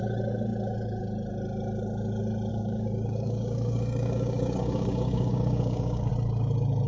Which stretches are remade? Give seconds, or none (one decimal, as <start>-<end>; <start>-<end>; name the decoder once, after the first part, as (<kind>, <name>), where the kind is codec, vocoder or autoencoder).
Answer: 2.5-6.1 (codec, DAC)